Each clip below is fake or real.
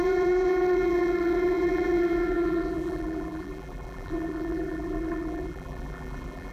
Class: fake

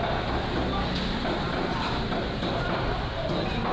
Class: real